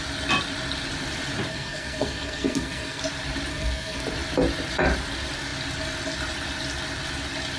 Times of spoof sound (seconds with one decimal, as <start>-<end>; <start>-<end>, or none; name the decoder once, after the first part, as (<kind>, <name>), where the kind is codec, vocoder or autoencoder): 1.5-3.0 (codec, SNAC); 3.5-4.0